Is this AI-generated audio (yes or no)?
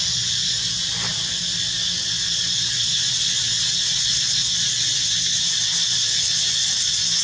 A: no